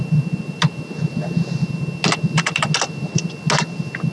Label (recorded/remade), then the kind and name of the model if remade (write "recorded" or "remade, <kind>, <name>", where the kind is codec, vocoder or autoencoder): recorded